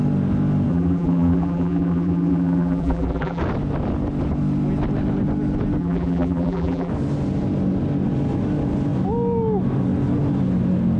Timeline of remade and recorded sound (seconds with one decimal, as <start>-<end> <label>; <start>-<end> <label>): 0.0-0.7 recorded; 0.7-3.4 remade; 3.4-5.8 recorded; 5.8-6.9 remade; 6.9-11.0 recorded